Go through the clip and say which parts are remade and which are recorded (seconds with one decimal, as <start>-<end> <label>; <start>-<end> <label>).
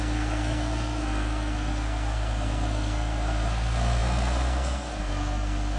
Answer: 0.0-5.8 remade